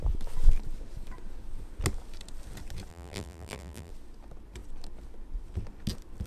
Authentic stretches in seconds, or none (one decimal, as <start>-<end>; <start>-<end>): 0.0-2.9; 3.9-6.3